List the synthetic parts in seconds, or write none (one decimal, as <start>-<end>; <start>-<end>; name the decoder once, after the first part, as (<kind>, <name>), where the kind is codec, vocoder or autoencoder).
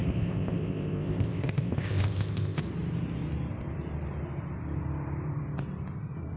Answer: 0.0-2.6 (codec, ZipCodec)